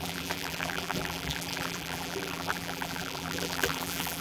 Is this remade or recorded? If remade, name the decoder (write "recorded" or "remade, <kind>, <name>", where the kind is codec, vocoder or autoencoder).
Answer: remade, vocoder, BigVGAN v2